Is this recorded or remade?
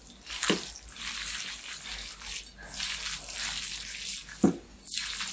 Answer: recorded